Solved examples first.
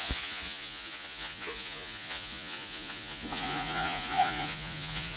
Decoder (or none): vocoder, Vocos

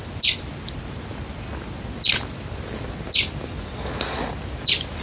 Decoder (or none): none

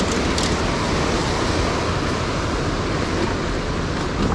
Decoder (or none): none